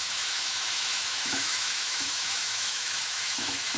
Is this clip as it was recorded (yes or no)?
no